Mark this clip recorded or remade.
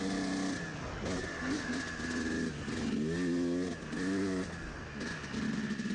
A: recorded